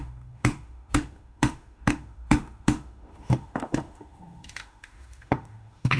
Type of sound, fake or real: fake